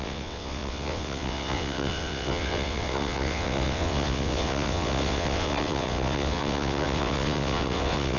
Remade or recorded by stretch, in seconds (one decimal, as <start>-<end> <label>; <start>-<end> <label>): 0.0-8.2 remade